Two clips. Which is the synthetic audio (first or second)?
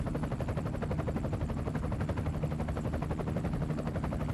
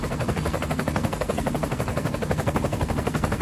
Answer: second